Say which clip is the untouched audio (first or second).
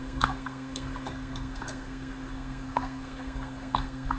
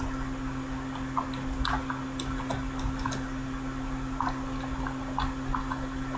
second